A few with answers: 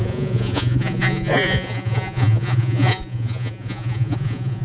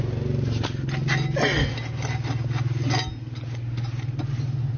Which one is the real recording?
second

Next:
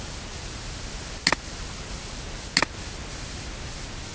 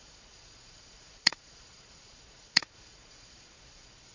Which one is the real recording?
first